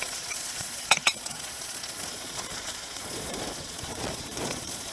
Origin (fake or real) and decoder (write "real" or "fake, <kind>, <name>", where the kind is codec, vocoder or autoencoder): fake, vocoder, Vocos